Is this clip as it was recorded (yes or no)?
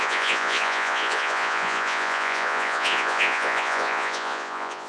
no